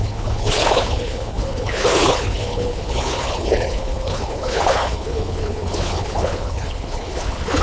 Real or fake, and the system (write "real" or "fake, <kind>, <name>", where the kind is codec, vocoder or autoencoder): fake, codec, HILCodec